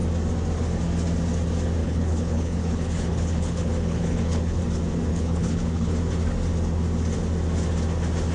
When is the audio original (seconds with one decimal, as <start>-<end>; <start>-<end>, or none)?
0.0-1.8; 4.6-5.1; 5.9-8.3